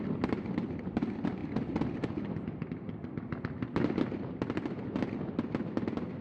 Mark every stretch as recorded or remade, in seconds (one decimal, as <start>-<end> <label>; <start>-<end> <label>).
0.0-6.2 recorded